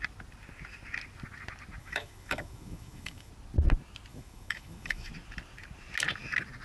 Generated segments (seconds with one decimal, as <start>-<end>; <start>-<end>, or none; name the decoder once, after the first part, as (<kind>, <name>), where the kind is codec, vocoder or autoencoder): 1.8-3.3 (autoencoder, DAC-VAE); 4.1-5.1